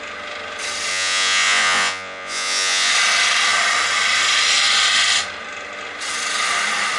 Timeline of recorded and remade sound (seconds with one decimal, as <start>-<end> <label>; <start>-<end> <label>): 0.0-0.9 recorded; 0.9-2.9 remade; 2.9-7.0 recorded